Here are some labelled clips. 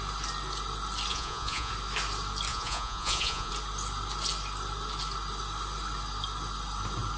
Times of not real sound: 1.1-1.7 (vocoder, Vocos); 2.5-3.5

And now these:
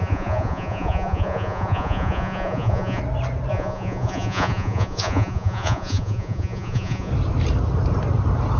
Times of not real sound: 0.0-3.0 (vocoder, Vocos); 3.5-7.1

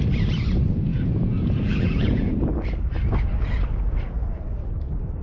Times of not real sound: 0.9-2.4 (vocoder, Vocos)

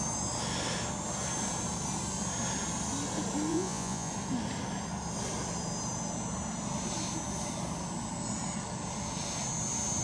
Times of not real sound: 3.5-4.1 (vocoder, Vocos)

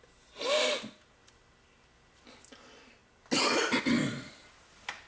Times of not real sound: none

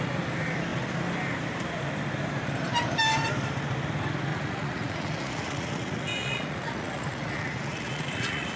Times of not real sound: 4.3-8.6 (vocoder, Vocos)

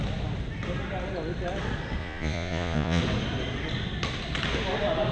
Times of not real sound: 2.0-3.0 (vocoder, Vocos)

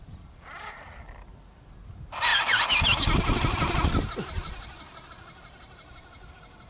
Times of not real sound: none